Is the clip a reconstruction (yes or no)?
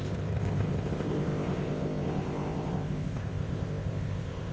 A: yes